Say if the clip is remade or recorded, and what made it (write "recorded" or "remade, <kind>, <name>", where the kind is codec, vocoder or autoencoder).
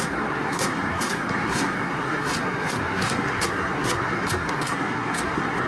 remade, codec, SNAC